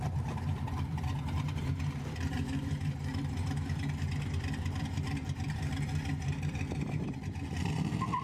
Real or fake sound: fake